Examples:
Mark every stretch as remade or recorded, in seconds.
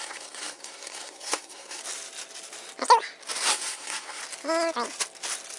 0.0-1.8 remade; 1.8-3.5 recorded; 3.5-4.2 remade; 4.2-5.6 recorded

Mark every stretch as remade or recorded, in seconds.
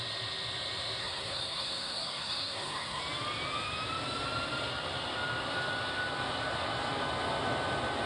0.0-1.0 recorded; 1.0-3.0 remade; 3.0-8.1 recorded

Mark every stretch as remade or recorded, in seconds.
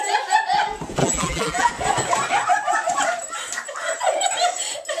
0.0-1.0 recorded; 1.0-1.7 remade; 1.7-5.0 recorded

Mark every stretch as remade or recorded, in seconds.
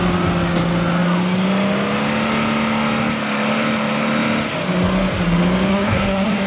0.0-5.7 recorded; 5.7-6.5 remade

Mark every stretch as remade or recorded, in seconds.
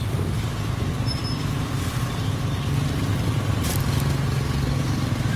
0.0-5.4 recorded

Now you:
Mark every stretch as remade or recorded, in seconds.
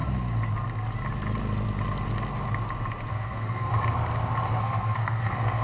0.0-3.1 recorded; 3.1-3.7 remade; 3.7-4.6 recorded; 4.6-5.6 remade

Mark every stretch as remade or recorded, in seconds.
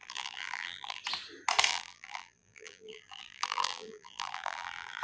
0.0-1.0 remade; 1.0-1.7 recorded; 1.7-5.0 remade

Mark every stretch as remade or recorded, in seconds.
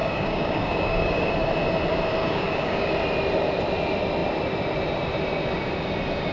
0.0-1.3 remade; 1.3-2.2 recorded; 2.2-2.9 remade; 2.9-6.3 recorded